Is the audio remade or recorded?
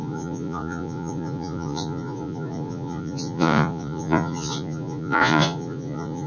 remade